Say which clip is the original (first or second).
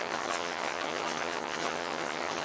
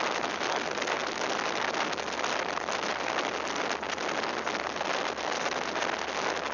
second